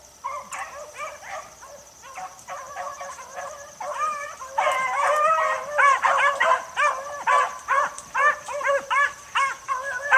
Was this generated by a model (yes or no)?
yes